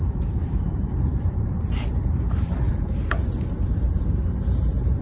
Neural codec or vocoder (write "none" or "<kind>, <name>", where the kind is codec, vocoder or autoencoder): vocoder, BigVGAN v2